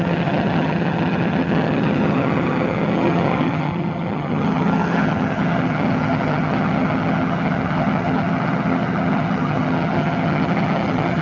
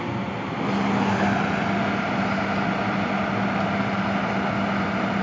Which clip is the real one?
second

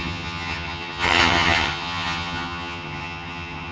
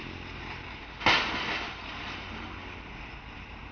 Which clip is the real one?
second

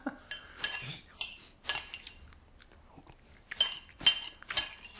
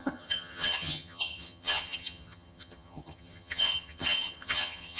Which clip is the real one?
first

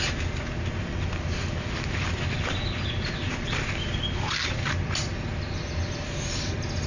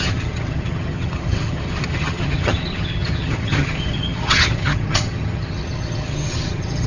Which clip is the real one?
first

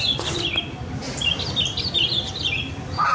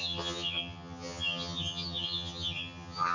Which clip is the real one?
first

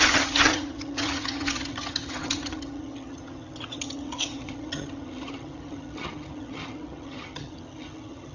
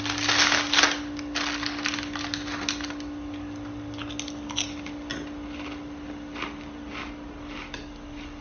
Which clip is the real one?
second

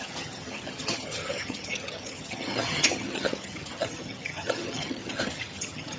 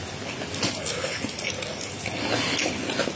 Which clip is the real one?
second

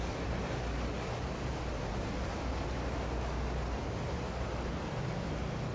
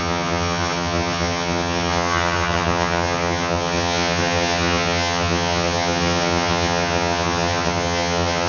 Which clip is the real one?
first